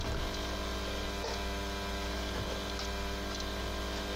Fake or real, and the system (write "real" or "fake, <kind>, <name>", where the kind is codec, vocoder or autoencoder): real